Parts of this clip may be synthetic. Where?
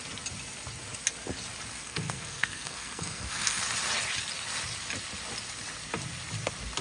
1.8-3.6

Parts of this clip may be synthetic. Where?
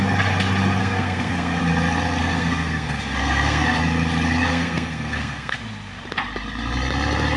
0.8-1.6; 2.2-3.8; 4.5-5.6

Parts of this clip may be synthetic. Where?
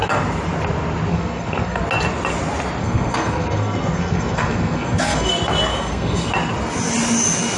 1.1-1.8; 2.8-5.3; 5.7-6.3